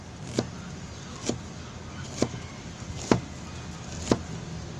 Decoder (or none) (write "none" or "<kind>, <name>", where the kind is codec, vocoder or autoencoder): none